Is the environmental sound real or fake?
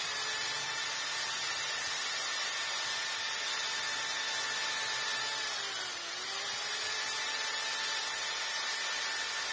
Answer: real